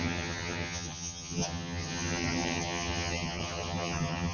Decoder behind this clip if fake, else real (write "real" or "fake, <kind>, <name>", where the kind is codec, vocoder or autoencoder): fake, vocoder, HiFi-GAN